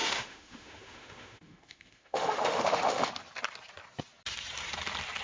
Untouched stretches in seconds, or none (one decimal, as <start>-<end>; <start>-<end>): 3.1-5.2